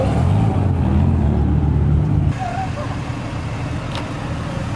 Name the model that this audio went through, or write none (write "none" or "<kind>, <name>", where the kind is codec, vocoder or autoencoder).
none